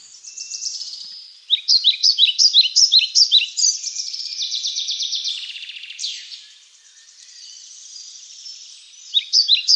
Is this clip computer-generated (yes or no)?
yes